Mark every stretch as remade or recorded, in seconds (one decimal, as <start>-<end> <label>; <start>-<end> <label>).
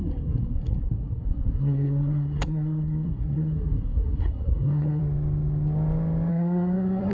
0.0-5.0 remade; 5.0-6.3 recorded; 6.3-7.1 remade